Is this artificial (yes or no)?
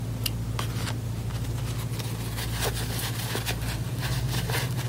no